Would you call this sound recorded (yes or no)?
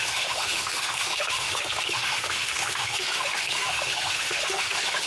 no